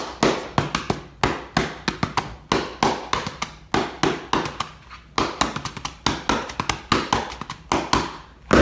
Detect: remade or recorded recorded